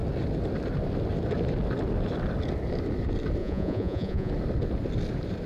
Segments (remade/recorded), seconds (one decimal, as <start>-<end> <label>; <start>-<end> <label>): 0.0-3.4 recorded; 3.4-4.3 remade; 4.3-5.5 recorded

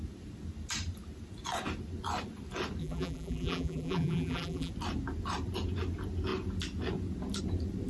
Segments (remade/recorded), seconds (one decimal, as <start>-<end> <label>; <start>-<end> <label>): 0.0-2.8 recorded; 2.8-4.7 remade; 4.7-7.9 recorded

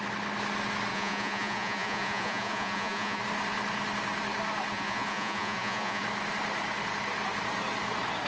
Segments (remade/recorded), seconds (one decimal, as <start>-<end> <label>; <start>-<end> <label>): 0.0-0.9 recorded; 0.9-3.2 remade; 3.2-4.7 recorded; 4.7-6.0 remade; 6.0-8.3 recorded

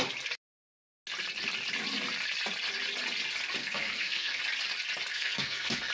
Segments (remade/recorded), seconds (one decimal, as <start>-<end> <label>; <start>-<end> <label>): 0.0-3.6 recorded; 3.6-4.4 remade; 4.4-5.1 recorded; 5.1-5.9 remade